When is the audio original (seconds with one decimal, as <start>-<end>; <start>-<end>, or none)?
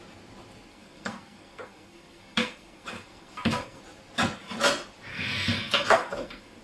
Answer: 0.0-0.7; 3.8-5.1